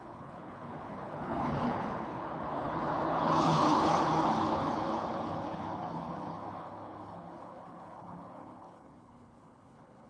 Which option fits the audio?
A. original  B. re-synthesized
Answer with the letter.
B